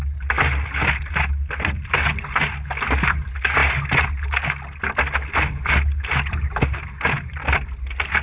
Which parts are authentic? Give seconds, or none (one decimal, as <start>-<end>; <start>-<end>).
0.0-8.2